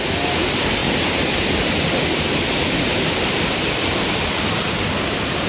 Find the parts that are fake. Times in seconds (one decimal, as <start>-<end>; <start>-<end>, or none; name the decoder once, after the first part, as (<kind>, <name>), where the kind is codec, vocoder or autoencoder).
0.8-1.3 (vocoder, BigVGAN v2); 2.9-4.8